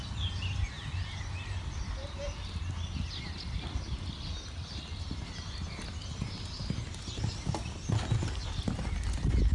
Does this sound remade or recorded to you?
recorded